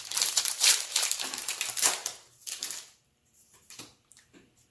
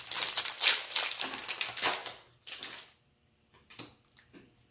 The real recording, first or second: second